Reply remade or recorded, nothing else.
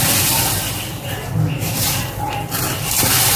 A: recorded